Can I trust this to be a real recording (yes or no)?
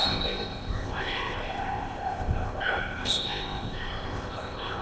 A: no